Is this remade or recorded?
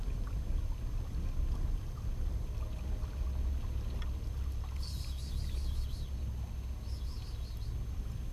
recorded